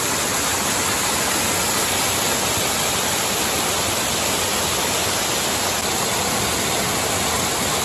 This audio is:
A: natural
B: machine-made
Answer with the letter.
A